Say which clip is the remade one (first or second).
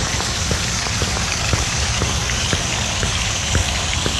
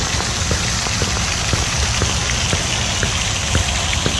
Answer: first